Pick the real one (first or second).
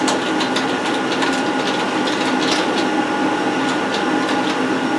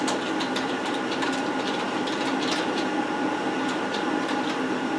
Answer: first